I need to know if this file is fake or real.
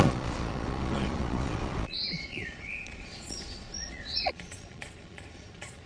fake